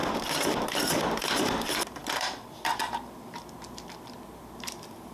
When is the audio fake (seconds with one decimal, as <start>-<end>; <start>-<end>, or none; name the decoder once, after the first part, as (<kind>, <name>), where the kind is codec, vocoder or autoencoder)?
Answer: 0.0-5.1 (vocoder, BigVGAN v2)